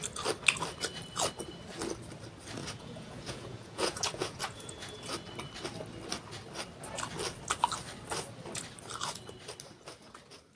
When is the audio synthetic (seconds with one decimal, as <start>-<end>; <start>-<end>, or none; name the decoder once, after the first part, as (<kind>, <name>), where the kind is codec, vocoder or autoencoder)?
2.6-5.1 (vocoder, Vocos)